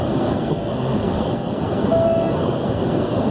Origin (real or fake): fake